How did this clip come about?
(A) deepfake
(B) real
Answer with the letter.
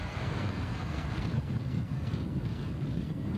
A